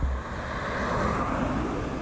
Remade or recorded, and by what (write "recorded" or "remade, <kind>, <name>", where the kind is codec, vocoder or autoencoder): recorded